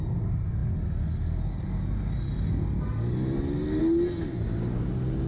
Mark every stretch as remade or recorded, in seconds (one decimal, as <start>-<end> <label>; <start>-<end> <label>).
0.0-5.3 recorded